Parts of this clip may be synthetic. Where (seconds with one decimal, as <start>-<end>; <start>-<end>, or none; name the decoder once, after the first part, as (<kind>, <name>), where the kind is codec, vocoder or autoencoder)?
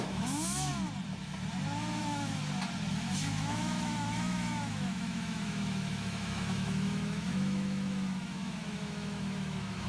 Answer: 0.0-0.7 (autoencoder, DAC-VAE); 2.0-2.4; 2.9-9.9